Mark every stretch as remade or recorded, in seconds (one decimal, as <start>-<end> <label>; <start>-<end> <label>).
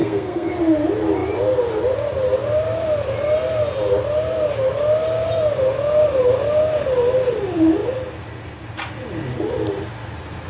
0.0-0.5 remade; 0.5-10.5 recorded